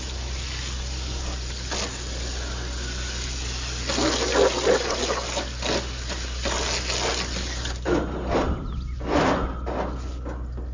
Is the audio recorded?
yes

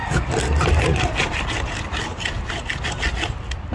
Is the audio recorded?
no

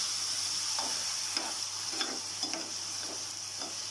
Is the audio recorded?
yes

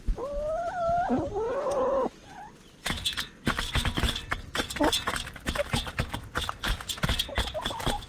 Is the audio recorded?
yes